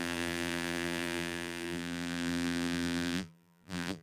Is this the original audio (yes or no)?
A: no